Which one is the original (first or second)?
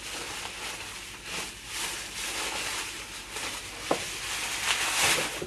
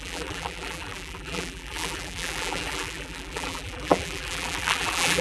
first